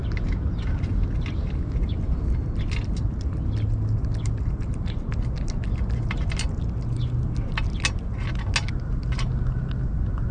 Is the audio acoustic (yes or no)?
yes